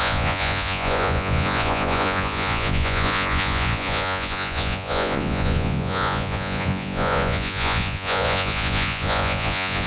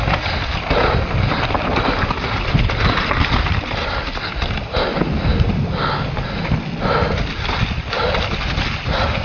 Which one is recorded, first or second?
second